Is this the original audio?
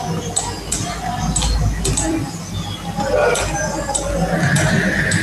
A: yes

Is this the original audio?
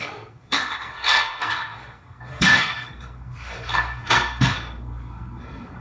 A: no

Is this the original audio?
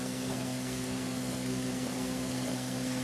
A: no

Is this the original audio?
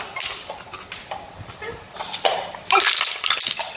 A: yes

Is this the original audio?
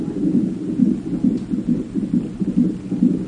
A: yes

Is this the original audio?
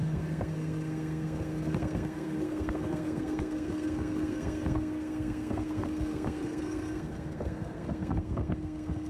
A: no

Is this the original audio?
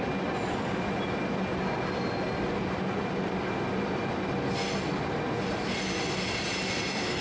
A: yes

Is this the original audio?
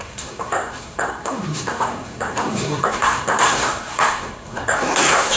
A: no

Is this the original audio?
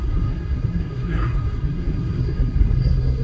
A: no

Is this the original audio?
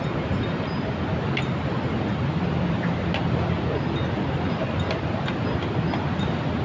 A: yes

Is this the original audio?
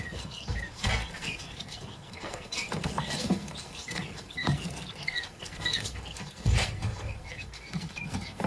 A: no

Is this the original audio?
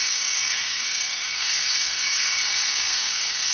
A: no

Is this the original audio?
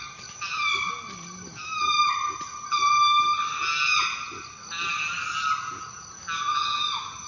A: yes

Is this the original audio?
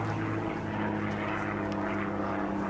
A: yes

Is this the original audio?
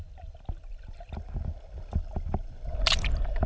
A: yes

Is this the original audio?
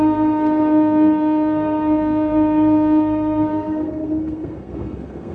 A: no